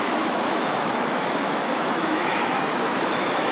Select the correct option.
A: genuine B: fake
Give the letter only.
B